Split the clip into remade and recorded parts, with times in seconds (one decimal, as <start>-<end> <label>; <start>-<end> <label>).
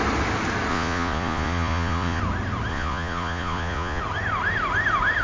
0.0-0.7 recorded; 0.7-2.2 remade; 2.2-2.7 recorded; 2.7-4.0 remade; 4.0-5.2 recorded